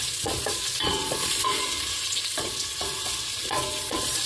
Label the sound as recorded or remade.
remade